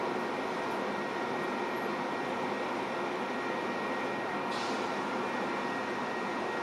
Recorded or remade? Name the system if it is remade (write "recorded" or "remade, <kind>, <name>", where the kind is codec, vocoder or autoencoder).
recorded